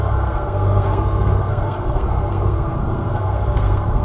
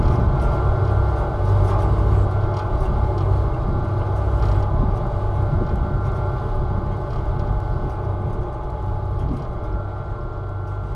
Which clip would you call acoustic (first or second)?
second